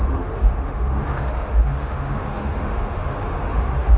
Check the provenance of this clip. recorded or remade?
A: remade